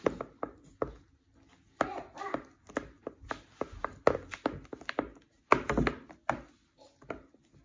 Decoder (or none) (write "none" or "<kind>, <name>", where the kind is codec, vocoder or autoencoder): none